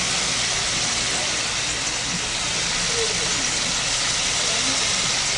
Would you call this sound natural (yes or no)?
yes